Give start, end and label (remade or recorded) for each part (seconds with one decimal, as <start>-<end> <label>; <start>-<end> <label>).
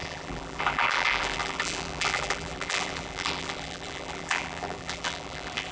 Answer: 0.0-5.7 remade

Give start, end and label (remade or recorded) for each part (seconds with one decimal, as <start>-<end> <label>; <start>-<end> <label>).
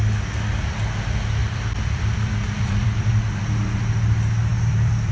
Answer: 0.0-1.4 recorded; 1.4-3.1 remade; 3.1-4.5 recorded; 4.5-5.1 remade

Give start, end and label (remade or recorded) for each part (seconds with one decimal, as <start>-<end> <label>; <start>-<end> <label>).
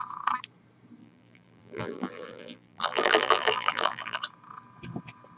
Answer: 0.0-1.0 recorded; 1.0-4.2 remade; 4.2-5.4 recorded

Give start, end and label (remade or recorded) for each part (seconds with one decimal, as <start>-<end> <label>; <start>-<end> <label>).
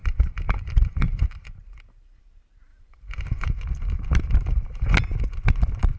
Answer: 0.0-2.2 remade; 2.2-2.7 recorded; 2.7-3.5 remade; 3.5-6.0 recorded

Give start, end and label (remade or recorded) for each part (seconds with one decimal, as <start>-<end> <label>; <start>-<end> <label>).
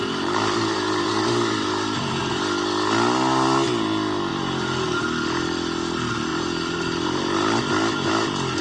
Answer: 0.0-2.1 remade; 2.1-4.3 recorded; 4.3-5.0 remade; 5.0-6.3 recorded; 6.3-7.6 remade; 7.6-8.6 recorded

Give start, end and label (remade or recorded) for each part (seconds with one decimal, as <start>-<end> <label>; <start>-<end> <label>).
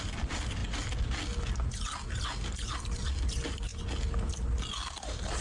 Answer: 0.0-0.6 remade; 0.6-3.2 recorded; 3.2-3.7 remade; 3.7-4.7 recorded; 4.7-5.4 remade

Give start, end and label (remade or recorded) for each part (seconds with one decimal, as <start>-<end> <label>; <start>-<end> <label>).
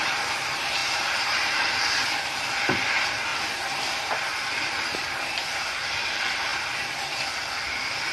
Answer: 0.0-3.3 remade; 3.3-4.3 recorded; 4.3-6.5 remade; 6.5-7.3 recorded; 7.3-8.1 remade